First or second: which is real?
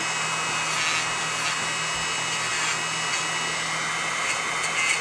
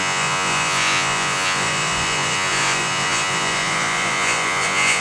first